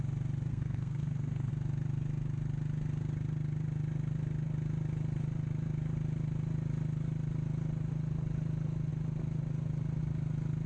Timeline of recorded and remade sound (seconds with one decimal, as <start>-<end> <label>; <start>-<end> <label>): 0.0-0.5 recorded; 0.5-1.5 remade; 1.5-10.7 recorded